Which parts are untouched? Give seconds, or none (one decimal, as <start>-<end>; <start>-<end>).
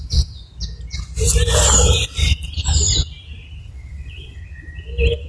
0.4-3.6; 4.4-5.3